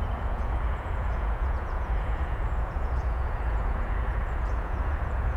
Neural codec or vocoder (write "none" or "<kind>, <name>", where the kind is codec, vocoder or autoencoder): vocoder, Vocos